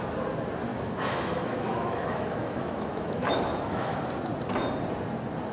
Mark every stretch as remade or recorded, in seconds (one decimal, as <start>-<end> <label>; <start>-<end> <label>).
0.0-0.7 recorded; 0.7-4.0 remade; 4.0-5.5 recorded